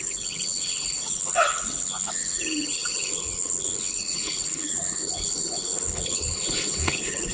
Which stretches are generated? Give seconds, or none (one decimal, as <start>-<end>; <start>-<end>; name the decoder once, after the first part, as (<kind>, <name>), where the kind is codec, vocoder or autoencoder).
0.0-7.3 (codec, HILCodec)